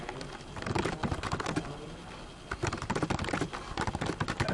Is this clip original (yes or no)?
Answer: yes